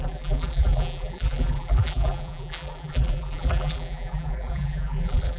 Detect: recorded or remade remade